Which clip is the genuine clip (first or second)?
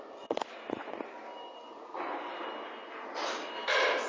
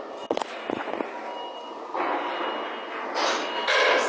second